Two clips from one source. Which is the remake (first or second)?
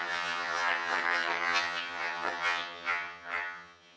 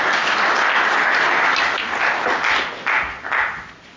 first